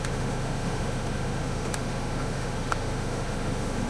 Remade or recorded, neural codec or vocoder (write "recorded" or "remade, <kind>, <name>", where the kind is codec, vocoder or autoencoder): remade, autoencoder, DAC-VAE